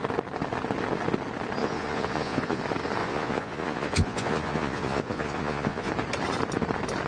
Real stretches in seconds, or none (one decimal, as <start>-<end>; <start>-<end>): 0.0-1.6; 2.6-3.0; 5.9-7.1